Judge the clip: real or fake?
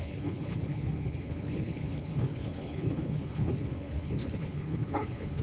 fake